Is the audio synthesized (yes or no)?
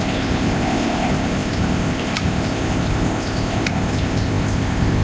yes